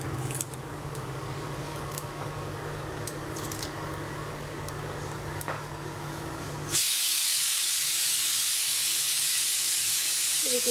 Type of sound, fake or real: fake